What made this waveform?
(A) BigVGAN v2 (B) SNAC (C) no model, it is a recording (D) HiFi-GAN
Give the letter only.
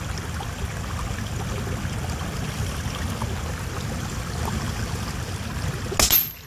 C